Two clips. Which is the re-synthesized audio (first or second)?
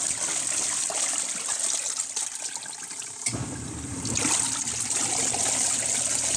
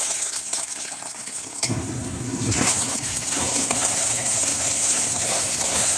second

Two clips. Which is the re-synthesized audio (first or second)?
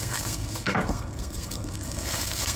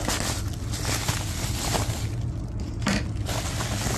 first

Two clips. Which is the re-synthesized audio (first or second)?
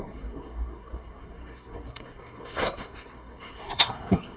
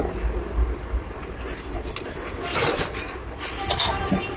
first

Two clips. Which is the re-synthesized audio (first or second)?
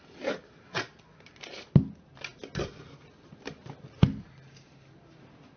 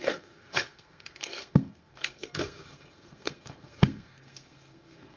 second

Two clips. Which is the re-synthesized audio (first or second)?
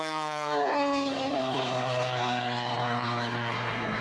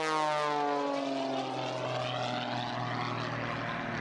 first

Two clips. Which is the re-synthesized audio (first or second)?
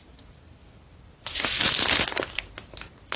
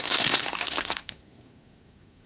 second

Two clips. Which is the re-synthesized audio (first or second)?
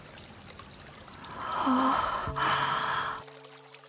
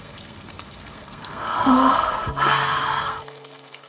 second